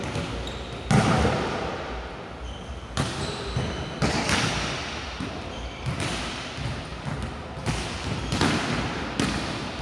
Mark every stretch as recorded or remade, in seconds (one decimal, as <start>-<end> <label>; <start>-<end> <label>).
0.0-9.8 recorded